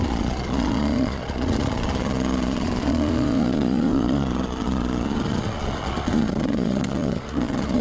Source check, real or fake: fake